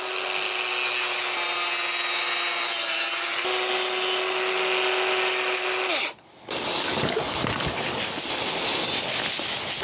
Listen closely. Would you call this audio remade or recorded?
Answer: recorded